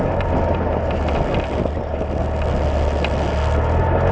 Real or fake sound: real